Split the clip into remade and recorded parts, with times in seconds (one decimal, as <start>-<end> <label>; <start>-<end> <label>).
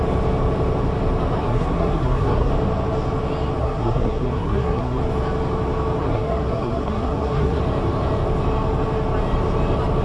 0.0-1.4 recorded; 1.4-2.5 remade; 2.5-3.6 recorded; 3.6-5.0 remade; 5.0-6.0 recorded; 6.0-7.6 remade; 7.6-10.0 recorded